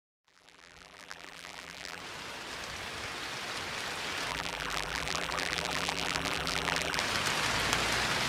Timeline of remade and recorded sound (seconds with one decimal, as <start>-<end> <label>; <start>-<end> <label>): 0.0-2.0 remade; 2.0-4.3 recorded; 4.3-7.0 remade; 7.0-8.3 recorded